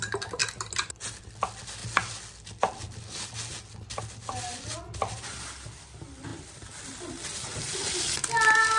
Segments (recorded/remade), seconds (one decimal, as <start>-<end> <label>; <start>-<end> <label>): 0.0-6.3 recorded; 6.3-8.0 remade; 8.0-8.8 recorded